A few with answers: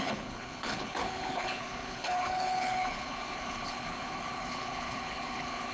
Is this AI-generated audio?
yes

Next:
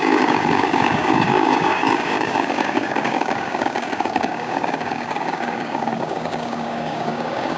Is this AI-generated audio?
yes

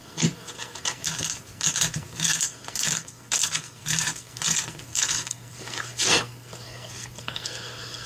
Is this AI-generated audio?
yes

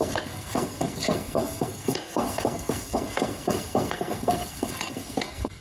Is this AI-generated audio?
yes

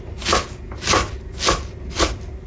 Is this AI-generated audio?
no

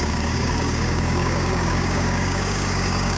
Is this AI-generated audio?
yes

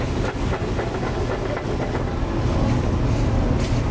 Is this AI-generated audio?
no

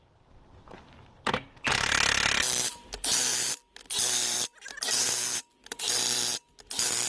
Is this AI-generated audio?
yes